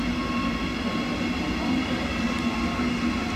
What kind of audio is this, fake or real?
real